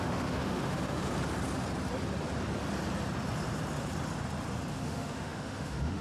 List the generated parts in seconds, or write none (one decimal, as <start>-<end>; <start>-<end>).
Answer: 0.0-1.1; 4.7-6.0